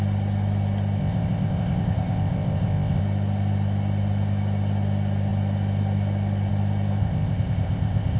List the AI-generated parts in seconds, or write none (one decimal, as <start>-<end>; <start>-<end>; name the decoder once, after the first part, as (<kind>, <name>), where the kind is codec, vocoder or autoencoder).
1.0-3.0 (codec, ZipCodec); 7.0-8.2

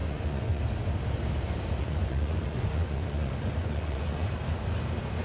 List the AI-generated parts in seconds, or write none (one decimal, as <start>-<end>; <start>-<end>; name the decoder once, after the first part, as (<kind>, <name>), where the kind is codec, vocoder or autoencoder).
0.0-0.6 (vocoder, Vocos); 1.8-4.3

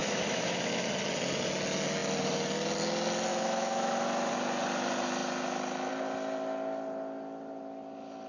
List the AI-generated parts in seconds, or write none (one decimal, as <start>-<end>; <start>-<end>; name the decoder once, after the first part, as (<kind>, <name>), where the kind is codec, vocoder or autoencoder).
0.0-0.9 (autoencoder, DAC-VAE); 3.3-4.3

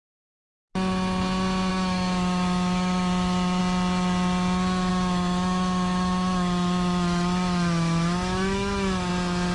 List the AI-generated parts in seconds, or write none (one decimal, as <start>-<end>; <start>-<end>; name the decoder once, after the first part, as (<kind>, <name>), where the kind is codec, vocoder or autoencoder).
1.7-3.6 (autoencoder, DAC-VAE); 4.9-9.1

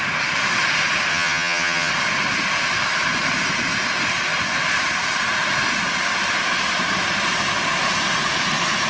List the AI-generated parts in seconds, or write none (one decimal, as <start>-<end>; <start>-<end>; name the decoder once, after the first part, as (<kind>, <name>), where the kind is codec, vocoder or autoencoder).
1.1-1.9 (vocoder, HiFi-GAN)

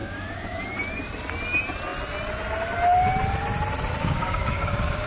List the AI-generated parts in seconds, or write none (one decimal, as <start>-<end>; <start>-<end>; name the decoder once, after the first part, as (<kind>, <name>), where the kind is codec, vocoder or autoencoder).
0.0-0.6 (codec, DAC); 4.0-5.1

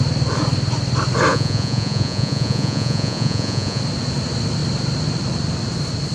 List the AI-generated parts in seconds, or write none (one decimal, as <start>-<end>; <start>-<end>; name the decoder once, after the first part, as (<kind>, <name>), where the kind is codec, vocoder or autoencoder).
1.3-3.8 (vocoder, Vocos)

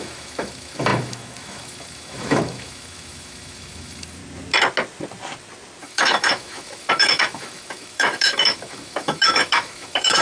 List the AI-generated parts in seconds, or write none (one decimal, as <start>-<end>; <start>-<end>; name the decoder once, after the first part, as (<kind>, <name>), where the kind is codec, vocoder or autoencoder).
0.0-4.2 (autoencoder, DAC-VAE); 5.8-10.2